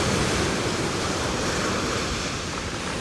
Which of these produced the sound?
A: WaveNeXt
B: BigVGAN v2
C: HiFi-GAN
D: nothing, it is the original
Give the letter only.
B